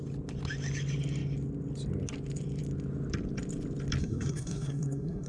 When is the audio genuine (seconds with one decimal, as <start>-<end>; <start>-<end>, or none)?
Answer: 0.0-4.0